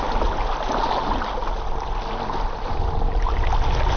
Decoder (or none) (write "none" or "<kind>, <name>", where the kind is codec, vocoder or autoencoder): none